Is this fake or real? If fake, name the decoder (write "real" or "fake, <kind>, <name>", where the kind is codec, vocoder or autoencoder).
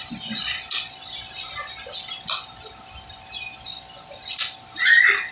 real